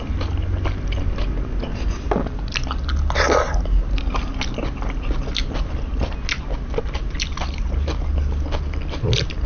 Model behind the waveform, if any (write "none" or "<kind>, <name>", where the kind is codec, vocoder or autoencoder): none